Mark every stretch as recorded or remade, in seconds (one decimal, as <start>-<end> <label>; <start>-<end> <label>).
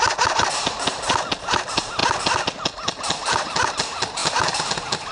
0.0-5.1 recorded